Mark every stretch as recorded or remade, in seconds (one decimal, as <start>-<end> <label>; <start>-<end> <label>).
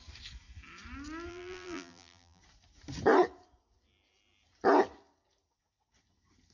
0.0-1.3 recorded; 1.3-2.4 remade; 2.4-6.5 recorded